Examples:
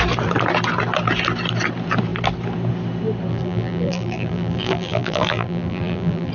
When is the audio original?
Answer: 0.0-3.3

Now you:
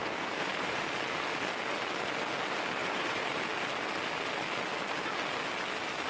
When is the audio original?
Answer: 0.8-2.8; 3.4-6.1